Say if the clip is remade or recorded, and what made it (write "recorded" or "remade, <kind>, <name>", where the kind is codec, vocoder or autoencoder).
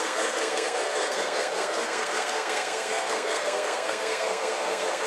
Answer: remade, codec, SNAC